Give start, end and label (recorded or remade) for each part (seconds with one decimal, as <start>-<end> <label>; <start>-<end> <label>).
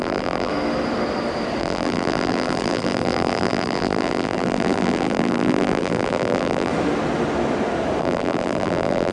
0.0-0.5 remade; 0.5-1.6 recorded; 1.6-6.7 remade; 6.7-8.0 recorded; 8.0-9.1 remade